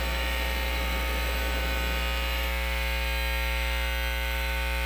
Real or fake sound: fake